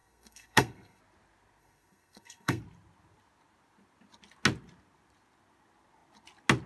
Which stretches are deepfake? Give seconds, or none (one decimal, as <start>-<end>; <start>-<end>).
0.0-1.0; 1.6-2.6